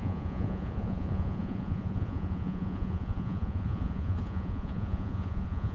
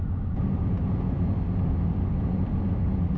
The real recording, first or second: second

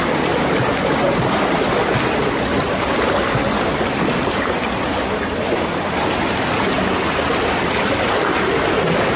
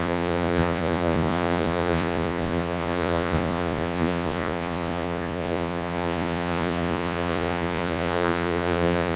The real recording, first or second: first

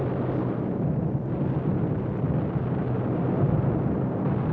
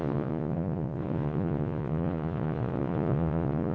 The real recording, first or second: first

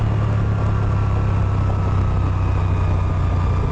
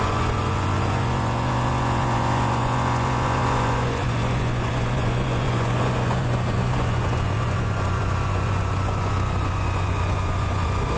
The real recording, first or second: first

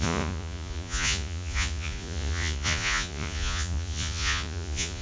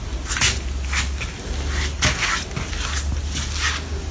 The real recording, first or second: second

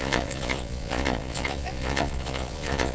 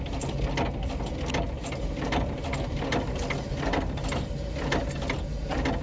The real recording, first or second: second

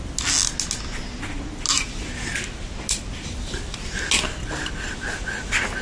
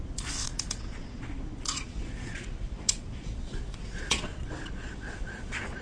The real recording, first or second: first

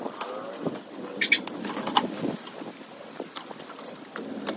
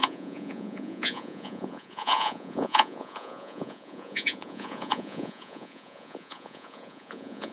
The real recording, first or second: first